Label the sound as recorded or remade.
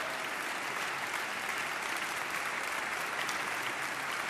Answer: recorded